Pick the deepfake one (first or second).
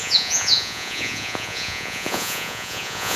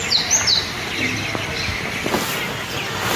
first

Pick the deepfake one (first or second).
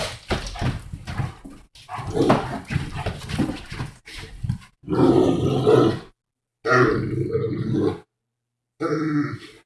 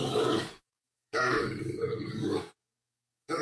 second